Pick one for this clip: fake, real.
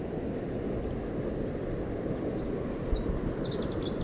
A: real